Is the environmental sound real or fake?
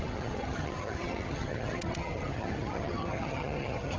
fake